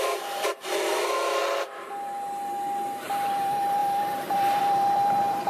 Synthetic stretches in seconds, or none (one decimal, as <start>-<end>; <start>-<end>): 0.0-1.4; 3.3-5.5